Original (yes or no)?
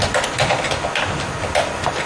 no